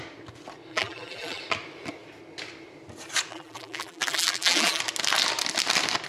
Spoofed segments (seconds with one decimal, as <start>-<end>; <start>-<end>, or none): 0.7-1.4; 3.3-4.8